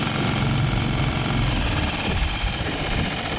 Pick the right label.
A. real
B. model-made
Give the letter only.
B